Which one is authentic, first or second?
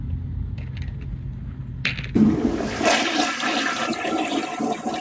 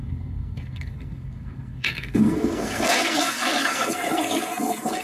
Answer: first